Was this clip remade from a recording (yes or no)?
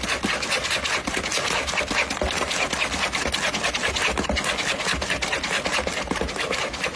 no